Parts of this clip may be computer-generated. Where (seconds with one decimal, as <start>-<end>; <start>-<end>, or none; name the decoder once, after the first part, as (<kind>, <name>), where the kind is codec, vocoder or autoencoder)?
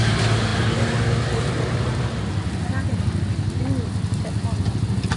none